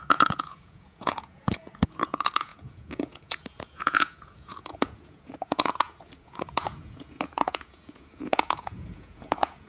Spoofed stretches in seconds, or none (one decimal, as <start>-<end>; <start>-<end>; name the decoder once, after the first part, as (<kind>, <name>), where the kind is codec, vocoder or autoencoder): 0.0-9.7 (vocoder, Vocos)